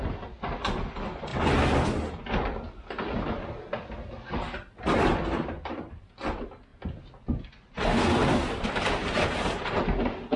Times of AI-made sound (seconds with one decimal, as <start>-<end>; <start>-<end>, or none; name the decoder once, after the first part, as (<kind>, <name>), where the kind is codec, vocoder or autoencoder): 8.2-9.8 (vocoder, BigVGAN v2)